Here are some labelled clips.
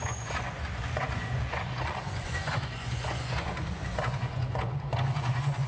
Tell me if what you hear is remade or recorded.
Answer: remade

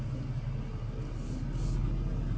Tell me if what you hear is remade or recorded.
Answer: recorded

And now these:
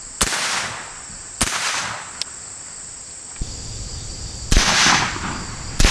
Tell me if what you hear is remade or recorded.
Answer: recorded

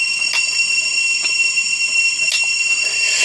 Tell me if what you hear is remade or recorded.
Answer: recorded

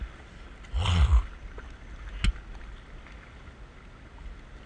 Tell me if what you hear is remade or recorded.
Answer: recorded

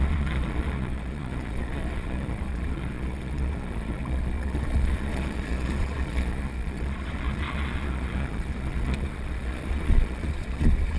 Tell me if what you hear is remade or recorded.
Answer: remade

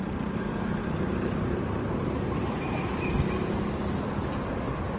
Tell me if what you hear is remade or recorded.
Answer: recorded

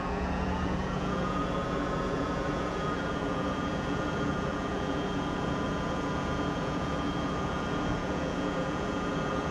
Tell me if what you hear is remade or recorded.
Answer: remade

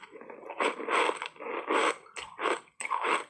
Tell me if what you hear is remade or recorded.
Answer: recorded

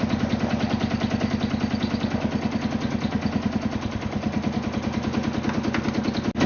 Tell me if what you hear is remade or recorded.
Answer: recorded